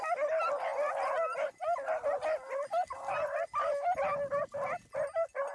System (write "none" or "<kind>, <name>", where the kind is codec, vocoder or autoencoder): none